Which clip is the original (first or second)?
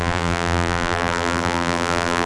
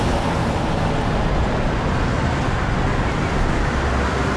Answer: second